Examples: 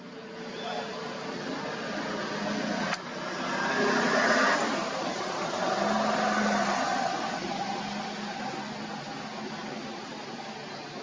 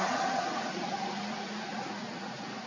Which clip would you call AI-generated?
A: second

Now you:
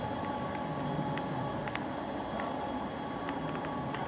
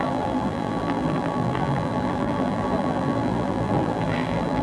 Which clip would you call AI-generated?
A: second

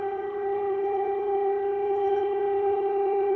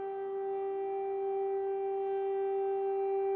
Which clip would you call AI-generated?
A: first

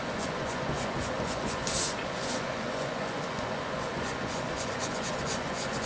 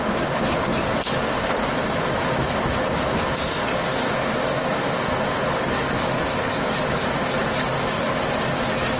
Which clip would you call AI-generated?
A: first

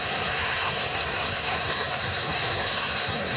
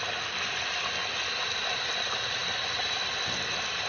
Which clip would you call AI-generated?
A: first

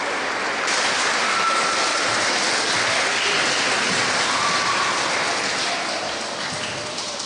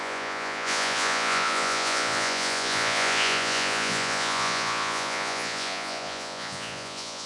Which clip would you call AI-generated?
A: second